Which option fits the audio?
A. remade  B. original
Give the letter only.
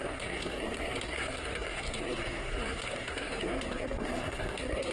A